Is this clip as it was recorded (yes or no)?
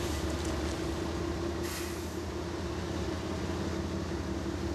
yes